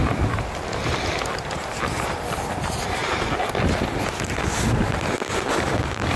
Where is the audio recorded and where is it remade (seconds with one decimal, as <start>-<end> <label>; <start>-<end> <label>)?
0.0-3.0 remade; 3.0-5.3 recorded; 5.3-6.2 remade